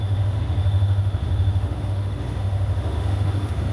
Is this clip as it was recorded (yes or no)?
no